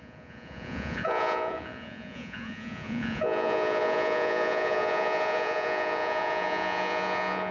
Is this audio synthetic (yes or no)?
yes